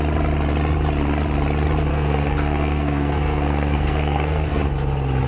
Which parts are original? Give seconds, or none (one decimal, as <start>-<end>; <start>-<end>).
0.0-1.9; 4.6-5.3